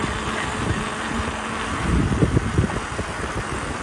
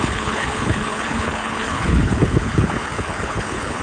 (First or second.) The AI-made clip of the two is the second